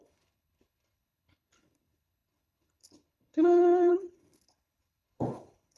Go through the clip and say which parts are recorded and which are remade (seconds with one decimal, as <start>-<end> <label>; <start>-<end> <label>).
0.0-5.8 remade